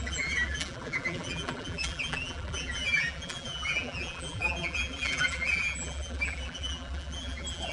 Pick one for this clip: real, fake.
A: fake